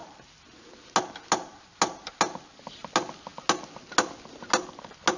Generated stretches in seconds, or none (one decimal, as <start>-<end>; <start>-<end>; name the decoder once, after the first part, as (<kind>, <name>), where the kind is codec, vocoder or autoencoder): none